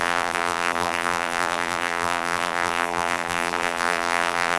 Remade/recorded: remade